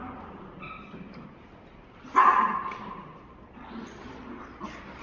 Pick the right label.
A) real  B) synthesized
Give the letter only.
A